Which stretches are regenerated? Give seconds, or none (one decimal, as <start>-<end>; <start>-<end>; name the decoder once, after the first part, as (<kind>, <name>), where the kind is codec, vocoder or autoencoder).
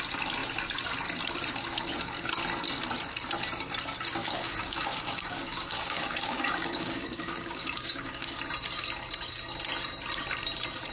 4.2-8.4 (codec, DAC)